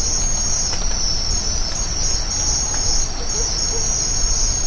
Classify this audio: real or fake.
real